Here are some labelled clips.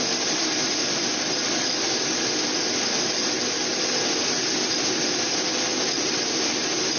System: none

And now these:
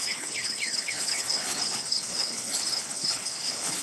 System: codec, HILCodec